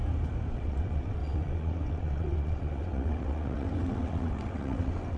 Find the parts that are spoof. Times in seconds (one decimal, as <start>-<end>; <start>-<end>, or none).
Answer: 0.5-5.2